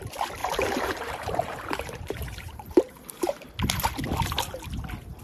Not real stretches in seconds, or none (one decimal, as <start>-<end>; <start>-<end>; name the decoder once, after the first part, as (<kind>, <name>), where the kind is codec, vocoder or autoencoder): 0.4-3.5 (vocoder, BigVGAN v2)